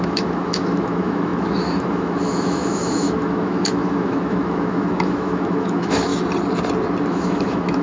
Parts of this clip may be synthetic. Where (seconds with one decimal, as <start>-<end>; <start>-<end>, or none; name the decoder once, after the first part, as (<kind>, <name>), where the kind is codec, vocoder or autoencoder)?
0.0-6.1 (autoencoder, DAC-VAE); 7.0-7.8